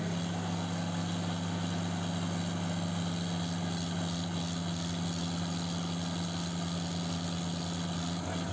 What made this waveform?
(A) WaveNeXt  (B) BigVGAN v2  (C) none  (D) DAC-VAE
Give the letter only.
C